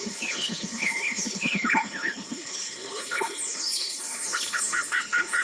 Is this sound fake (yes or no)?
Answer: yes